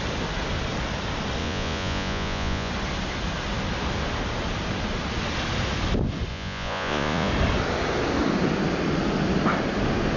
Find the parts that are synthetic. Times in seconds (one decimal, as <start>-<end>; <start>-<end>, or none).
1.4-2.7; 6.3-7.3